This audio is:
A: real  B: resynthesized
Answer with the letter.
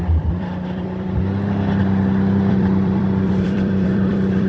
B